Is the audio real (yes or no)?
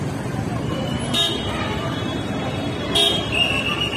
no